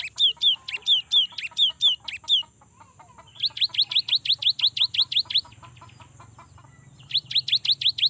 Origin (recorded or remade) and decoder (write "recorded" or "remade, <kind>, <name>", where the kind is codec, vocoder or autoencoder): recorded